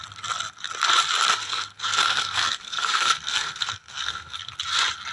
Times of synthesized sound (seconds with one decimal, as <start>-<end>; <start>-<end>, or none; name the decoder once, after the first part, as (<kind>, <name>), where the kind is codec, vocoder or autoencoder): 1.4-4.5 (codec, SNAC)